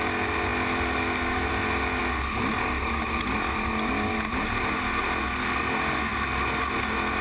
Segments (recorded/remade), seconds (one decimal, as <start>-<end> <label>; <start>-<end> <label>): 0.0-7.2 recorded